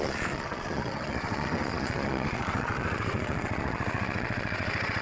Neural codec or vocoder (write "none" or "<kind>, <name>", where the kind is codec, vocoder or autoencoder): vocoder, Vocos